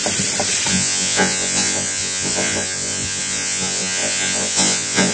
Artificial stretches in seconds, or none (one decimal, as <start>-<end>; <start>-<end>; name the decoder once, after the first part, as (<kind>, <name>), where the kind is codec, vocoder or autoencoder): 0.7-5.1 (vocoder, Vocos)